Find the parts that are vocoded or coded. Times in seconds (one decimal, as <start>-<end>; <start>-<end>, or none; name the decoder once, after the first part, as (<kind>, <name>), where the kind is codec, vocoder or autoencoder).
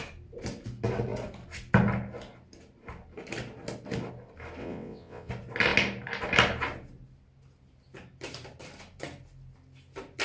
4.6-5.3 (vocoder, WaveNeXt)